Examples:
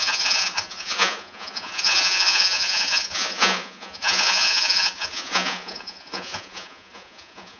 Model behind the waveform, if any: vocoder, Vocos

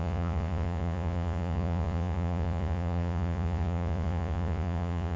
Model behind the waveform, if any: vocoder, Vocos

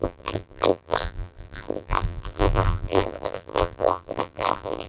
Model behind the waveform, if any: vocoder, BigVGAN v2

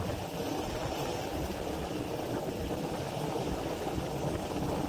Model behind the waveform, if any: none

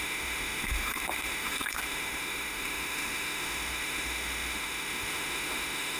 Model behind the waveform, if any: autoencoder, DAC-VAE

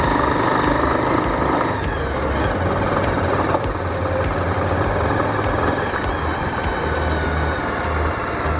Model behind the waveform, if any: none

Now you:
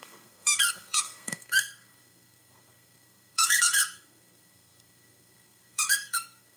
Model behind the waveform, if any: codec, SNAC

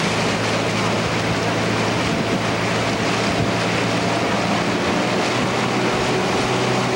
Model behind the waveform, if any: none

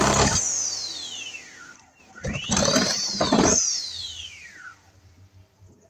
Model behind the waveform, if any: vocoder, BigVGAN v2